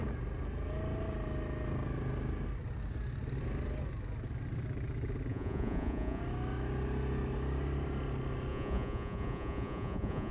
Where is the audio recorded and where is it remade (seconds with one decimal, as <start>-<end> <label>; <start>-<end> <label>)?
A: 0.0-5.3 recorded; 5.3-6.2 remade; 6.2-8.5 recorded; 8.5-10.3 remade